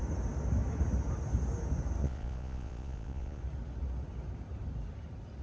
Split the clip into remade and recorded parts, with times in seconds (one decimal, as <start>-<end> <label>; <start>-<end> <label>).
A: 0.0-2.0 recorded; 2.0-3.4 remade; 3.4-5.4 recorded